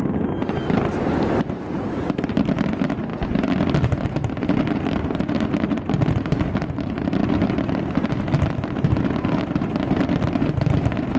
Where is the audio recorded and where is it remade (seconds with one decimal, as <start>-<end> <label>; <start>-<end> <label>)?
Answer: 0.0-11.2 recorded

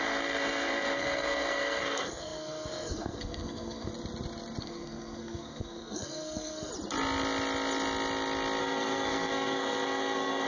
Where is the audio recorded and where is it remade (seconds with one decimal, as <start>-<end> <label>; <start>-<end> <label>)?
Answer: 0.0-3.9 remade; 3.9-4.6 recorded; 4.6-6.7 remade; 6.7-8.6 recorded; 8.6-10.5 remade